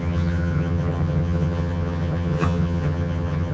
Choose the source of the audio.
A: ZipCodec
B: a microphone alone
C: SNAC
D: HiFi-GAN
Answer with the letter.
D